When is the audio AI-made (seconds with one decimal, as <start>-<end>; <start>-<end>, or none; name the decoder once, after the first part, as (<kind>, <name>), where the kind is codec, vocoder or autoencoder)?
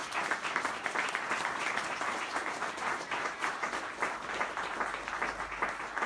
none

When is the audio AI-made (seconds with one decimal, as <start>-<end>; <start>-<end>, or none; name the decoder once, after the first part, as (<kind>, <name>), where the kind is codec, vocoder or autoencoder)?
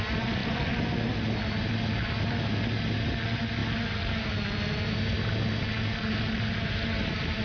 none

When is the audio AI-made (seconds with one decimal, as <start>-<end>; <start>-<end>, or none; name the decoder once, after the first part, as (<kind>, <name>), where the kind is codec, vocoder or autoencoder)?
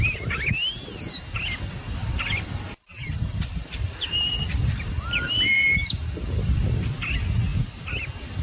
2.0-7.0 (vocoder, BigVGAN v2); 7.5-8.0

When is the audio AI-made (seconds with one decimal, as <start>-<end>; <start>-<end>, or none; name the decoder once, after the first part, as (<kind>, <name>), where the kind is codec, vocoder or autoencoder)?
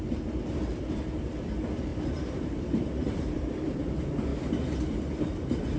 1.9-2.5 (vocoder, BigVGAN v2); 3.0-3.9; 4.3-5.0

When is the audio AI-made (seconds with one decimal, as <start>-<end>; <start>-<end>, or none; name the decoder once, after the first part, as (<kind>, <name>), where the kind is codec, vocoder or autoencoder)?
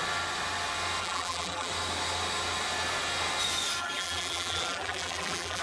1.0-1.7 (vocoder, BigVGAN v2); 3.8-5.6